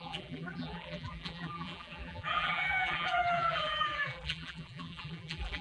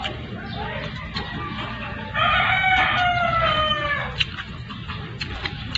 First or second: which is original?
second